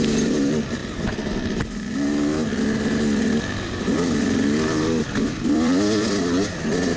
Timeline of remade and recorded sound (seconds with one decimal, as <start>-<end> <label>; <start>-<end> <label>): 0.0-0.8 remade; 0.8-3.3 recorded; 3.3-7.0 remade